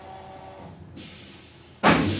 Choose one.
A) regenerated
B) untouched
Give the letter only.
B